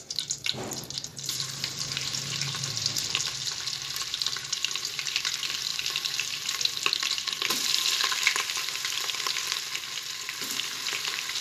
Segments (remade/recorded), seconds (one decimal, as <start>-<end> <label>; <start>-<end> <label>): 0.0-11.4 recorded